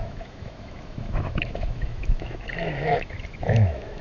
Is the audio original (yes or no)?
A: no